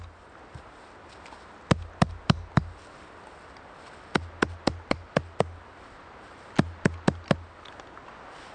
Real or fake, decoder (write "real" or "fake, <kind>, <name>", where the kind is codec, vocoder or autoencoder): real